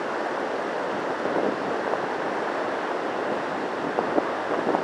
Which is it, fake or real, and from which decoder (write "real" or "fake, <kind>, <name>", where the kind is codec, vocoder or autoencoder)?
real